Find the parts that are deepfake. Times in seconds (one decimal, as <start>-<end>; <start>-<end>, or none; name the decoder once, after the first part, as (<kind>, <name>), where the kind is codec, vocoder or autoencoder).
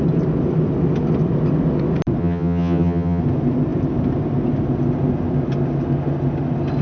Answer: 2.2-3.2 (vocoder, HiFi-GAN)